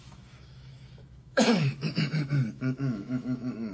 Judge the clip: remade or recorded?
remade